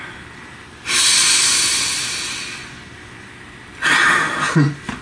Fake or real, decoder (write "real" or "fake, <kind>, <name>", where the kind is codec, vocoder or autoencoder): real